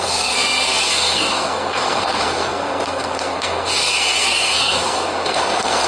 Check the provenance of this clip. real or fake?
fake